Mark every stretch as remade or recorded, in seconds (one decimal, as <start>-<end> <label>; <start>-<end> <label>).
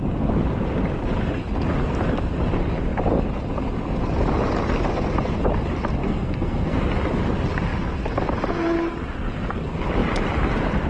0.0-6.0 recorded; 6.0-6.8 remade; 6.8-10.9 recorded